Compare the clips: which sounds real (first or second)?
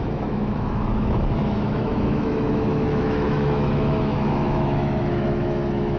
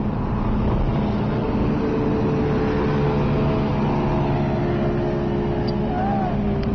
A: second